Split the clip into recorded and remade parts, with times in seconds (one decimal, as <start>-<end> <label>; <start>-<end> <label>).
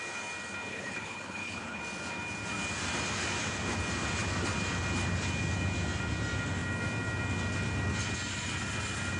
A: 0.0-0.7 recorded; 0.7-1.8 remade; 1.8-9.2 recorded